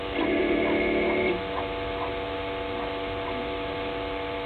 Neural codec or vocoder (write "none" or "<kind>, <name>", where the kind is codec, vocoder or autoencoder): none